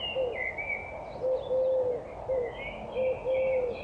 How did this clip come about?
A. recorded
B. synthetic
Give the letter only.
A